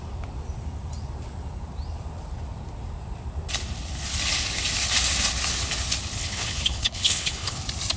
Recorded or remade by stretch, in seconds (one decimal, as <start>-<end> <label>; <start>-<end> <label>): 0.0-6.2 recorded; 6.2-7.6 remade; 7.6-8.0 recorded